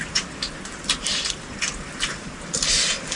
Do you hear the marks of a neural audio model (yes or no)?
yes